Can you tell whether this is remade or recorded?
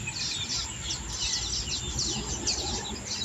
recorded